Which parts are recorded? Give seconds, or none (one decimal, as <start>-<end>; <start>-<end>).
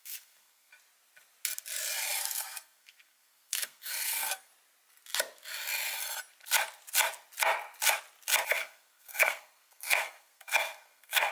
0.7-2.2; 4.5-8.5